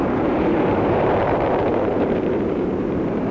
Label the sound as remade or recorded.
remade